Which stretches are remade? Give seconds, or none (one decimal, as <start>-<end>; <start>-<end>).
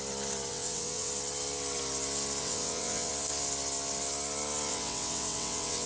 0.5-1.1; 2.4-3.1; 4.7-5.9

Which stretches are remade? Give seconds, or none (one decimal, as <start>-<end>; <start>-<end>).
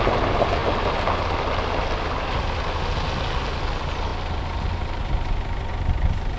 none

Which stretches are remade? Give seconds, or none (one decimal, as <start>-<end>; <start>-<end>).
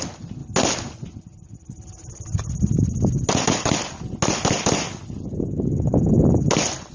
none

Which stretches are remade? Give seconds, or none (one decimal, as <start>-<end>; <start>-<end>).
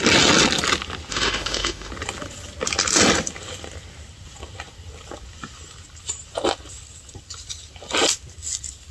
1.1-1.9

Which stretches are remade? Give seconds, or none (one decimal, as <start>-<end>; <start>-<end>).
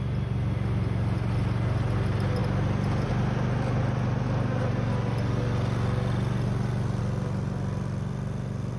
none